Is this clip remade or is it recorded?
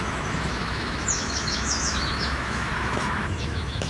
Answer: remade